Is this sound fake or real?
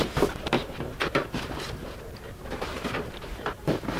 fake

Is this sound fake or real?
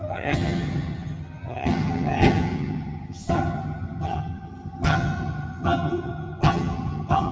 fake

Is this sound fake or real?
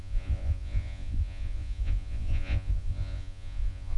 fake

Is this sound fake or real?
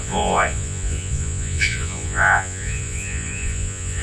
fake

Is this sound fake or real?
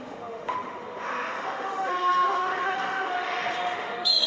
fake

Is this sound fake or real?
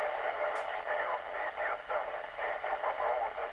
real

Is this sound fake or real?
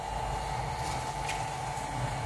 real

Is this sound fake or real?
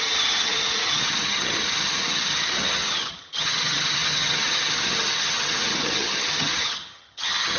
fake